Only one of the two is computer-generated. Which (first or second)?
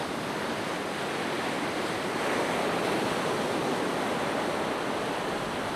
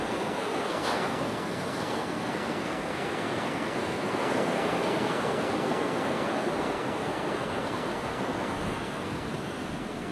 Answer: second